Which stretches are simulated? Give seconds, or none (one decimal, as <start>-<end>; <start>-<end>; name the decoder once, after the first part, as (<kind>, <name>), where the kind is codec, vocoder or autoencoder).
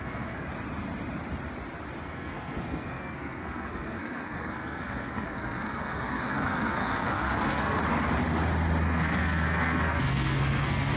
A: 0.0-0.5 (codec, SNAC); 2.0-7.8; 8.8-11.0